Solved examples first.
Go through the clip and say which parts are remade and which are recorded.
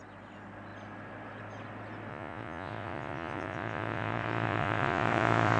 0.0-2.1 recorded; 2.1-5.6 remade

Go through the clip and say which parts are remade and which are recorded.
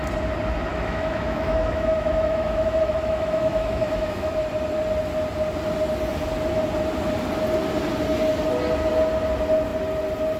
0.0-0.7 recorded; 0.7-4.3 remade; 4.3-10.4 recorded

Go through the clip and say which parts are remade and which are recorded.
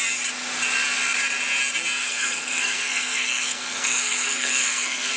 0.0-2.0 recorded; 2.0-5.2 remade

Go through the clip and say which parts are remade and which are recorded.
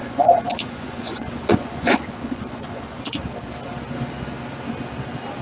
0.0-3.2 remade; 3.2-5.4 recorded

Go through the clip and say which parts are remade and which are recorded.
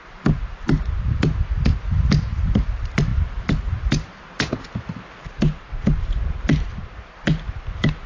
0.0-3.1 remade; 3.1-3.7 recorded; 3.7-8.1 remade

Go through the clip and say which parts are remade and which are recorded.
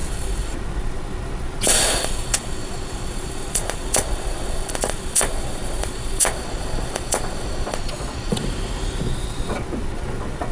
0.0-8.4 remade; 8.4-9.0 recorded; 9.0-10.5 remade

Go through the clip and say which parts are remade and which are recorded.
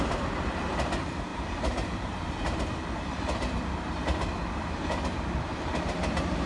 0.0-1.3 recorded; 1.3-3.6 remade; 3.6-6.5 recorded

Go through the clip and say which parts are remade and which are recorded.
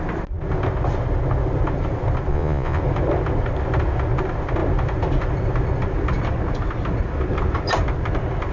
0.0-2.3 recorded; 2.3-2.8 remade; 2.8-8.5 recorded